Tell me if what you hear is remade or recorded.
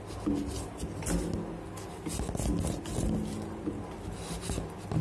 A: recorded